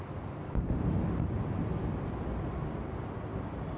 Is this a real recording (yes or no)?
yes